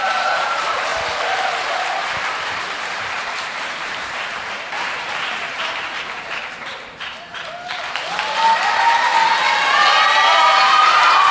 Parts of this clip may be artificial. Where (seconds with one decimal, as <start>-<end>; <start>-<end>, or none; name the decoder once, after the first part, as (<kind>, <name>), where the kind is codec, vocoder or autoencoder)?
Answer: 0.0-0.9 (vocoder, BigVGAN v2); 1.8-9.1; 10.1-11.3